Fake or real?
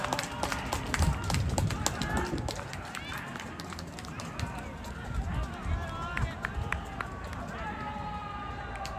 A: real